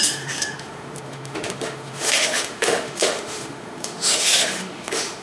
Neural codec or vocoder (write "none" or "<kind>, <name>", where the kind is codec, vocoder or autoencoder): autoencoder, DAC-VAE